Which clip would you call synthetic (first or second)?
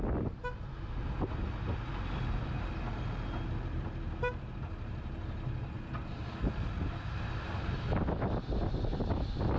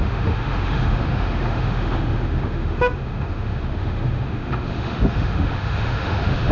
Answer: second